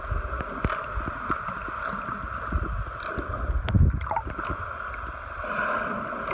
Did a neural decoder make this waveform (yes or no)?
no